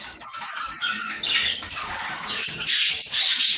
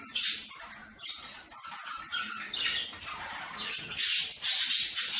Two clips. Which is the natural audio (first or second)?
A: second